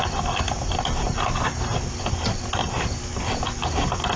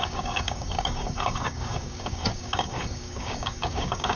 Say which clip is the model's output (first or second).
second